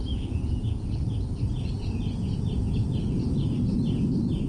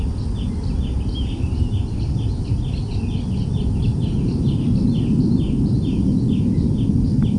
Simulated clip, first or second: first